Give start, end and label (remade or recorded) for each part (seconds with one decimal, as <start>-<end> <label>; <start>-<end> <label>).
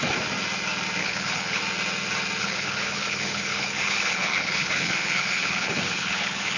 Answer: 0.0-1.0 recorded; 1.0-1.6 remade; 1.6-2.4 recorded; 2.4-6.6 remade